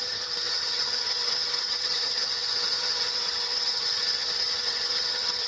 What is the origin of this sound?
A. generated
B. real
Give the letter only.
A